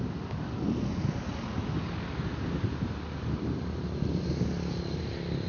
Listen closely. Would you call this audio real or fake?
real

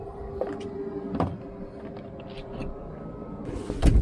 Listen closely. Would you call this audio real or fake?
real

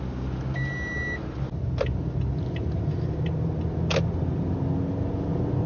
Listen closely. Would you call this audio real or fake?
real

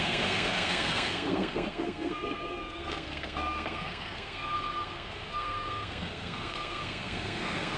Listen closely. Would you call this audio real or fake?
fake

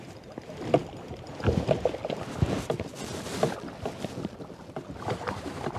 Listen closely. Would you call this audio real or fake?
real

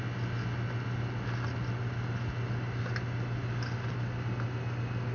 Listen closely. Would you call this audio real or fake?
real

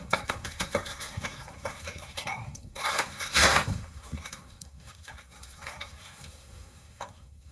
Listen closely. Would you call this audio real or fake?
fake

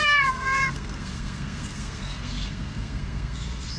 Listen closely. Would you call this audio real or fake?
fake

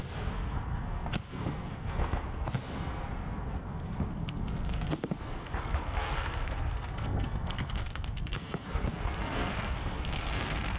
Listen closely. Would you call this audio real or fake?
fake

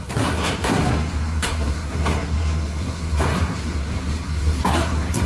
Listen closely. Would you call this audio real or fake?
fake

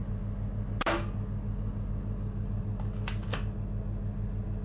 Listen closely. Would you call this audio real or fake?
real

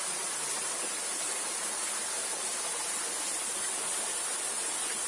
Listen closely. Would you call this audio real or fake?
real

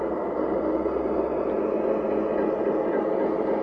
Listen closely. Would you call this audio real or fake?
real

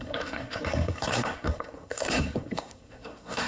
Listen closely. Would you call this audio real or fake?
fake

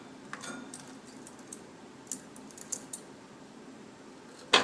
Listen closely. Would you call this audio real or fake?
real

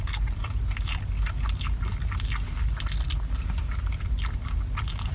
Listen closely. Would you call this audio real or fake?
real